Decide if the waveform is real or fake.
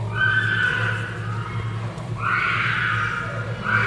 real